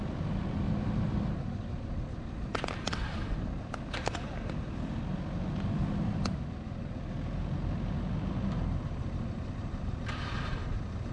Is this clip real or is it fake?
real